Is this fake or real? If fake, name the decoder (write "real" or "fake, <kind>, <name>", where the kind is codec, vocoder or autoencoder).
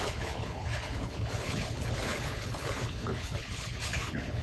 fake, codec, HILCodec